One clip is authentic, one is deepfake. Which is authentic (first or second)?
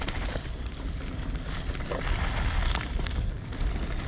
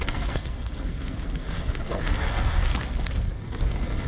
first